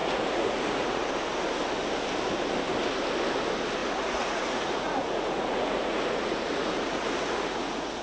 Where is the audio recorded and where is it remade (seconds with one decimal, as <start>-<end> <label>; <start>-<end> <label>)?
0.0-1.1 remade; 1.1-3.8 recorded; 3.8-8.0 remade

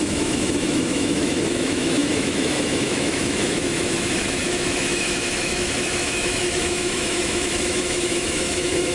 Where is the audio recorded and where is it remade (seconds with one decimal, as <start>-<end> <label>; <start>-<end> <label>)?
0.0-8.9 remade

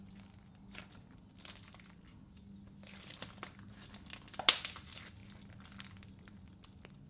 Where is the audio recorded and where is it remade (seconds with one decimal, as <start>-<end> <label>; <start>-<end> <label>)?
0.0-7.1 recorded

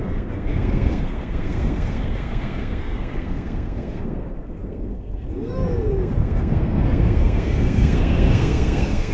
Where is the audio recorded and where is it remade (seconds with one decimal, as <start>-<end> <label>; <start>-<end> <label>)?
0.0-9.1 remade

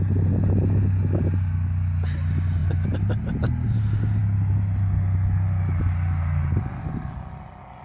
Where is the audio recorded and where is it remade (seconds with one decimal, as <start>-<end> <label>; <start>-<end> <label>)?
0.0-7.8 recorded